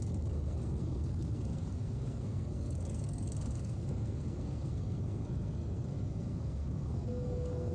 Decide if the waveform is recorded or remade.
remade